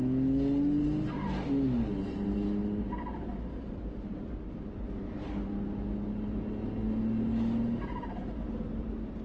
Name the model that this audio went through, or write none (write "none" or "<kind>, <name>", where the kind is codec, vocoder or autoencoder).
none